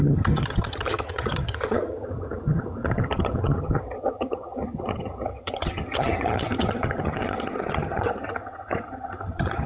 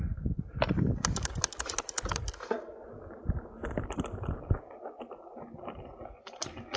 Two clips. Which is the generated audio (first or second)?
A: first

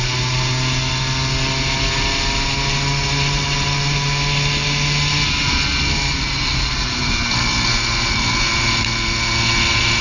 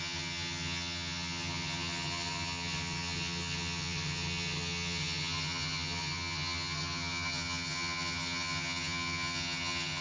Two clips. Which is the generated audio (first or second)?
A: second